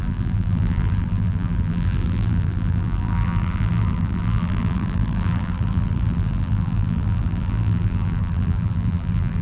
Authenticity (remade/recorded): remade